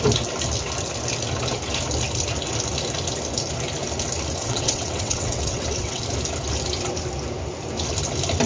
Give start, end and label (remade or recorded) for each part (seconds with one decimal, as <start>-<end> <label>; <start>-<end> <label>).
0.0-4.4 recorded; 4.4-6.0 remade; 6.0-8.5 recorded